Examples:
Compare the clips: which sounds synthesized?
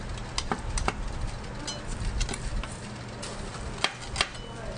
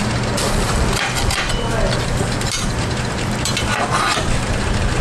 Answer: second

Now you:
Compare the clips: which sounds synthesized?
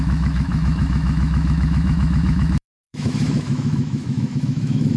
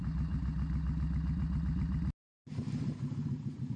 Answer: first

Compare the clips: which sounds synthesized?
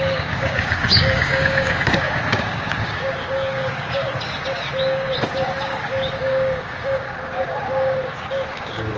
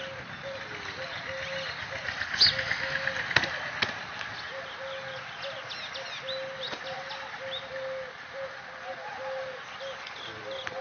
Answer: first